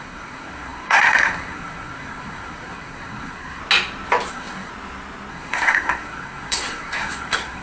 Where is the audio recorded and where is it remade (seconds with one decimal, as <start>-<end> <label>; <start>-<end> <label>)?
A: 0.0-3.6 remade; 3.6-4.3 recorded; 4.3-4.7 remade; 4.7-5.3 recorded; 5.3-7.6 remade